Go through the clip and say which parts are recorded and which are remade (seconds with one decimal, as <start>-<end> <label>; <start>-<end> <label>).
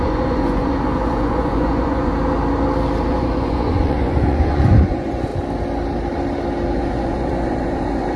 0.0-2.1 remade; 2.1-3.1 recorded; 3.1-5.3 remade; 5.3-6.7 recorded; 6.7-8.2 remade